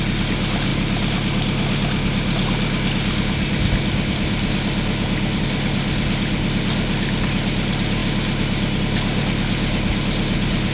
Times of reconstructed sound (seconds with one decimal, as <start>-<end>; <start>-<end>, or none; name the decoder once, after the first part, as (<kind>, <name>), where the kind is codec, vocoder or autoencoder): none